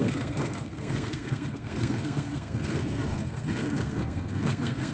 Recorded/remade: remade